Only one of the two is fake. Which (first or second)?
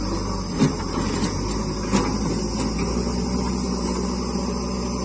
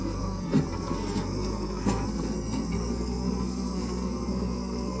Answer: second